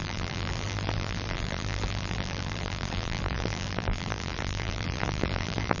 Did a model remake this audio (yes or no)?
yes